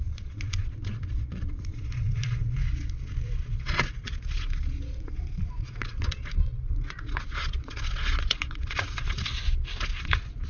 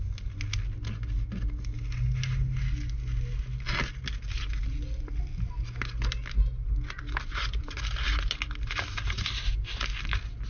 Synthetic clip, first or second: first